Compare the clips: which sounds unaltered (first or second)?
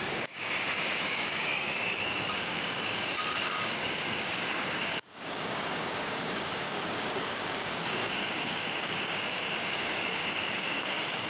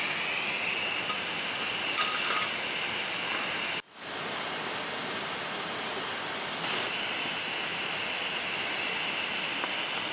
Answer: second